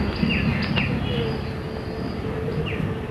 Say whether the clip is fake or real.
real